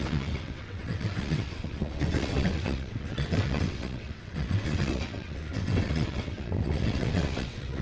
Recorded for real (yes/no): no